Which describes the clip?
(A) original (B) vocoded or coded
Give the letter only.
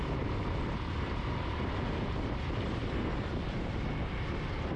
A